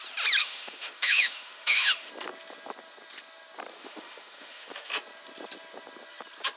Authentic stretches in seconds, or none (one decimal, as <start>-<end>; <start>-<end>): 0.0-0.4; 2.1-3.7; 4.9-6.6